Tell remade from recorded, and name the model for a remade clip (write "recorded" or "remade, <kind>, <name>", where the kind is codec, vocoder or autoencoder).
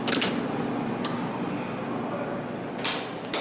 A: recorded